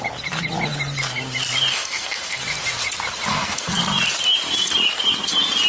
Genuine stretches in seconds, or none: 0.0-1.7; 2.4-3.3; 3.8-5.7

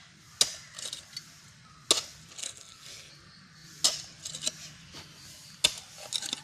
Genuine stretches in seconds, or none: 0.0-2.4; 3.1-6.4

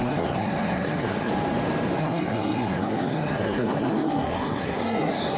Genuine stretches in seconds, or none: 1.3-2.0

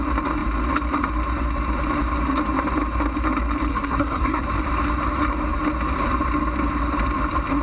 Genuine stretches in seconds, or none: 0.0-3.7; 4.4-7.6

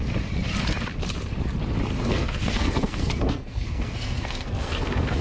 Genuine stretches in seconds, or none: 0.0-2.1